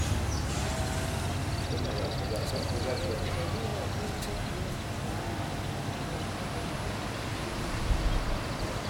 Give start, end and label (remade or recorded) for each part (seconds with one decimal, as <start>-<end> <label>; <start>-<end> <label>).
0.0-8.9 recorded